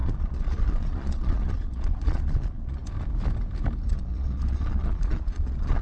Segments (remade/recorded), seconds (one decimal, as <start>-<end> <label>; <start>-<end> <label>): 0.0-2.8 remade; 2.8-3.9 recorded; 3.9-5.8 remade